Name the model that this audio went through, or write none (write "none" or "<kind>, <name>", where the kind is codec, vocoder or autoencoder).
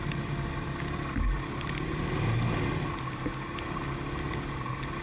none